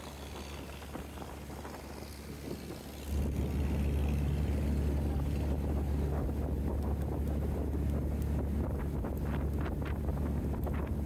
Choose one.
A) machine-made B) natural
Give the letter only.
B